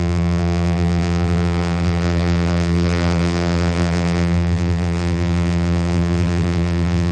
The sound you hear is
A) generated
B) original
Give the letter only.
A